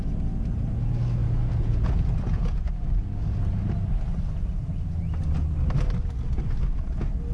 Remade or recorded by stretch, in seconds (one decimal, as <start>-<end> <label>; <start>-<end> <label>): 0.0-1.2 recorded; 1.2-2.9 remade; 2.9-7.3 recorded